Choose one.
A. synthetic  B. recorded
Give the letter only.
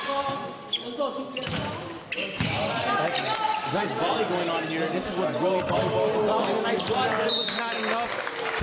B